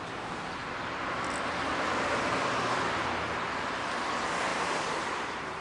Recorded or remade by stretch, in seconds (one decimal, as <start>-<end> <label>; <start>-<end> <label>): 0.0-4.5 recorded; 4.5-5.6 remade